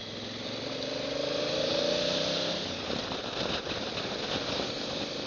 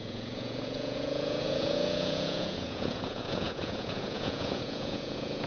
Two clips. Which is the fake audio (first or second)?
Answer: second